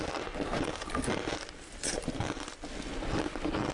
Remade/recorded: recorded